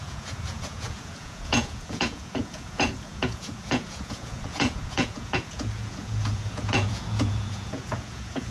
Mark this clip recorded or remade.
remade